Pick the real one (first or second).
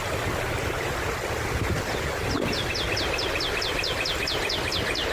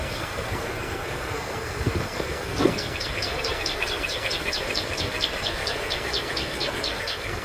first